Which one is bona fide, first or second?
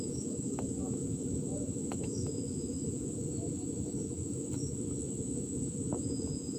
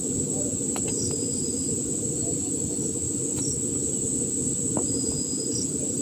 second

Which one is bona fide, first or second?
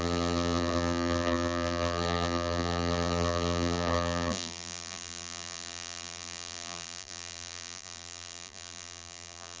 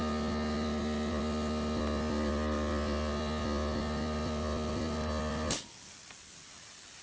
second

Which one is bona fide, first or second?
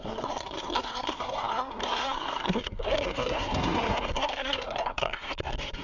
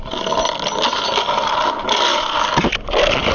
second